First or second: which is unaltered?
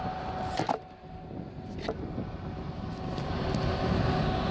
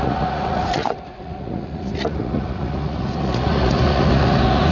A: first